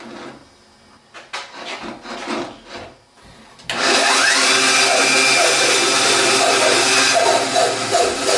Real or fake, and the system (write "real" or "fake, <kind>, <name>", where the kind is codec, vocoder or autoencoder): real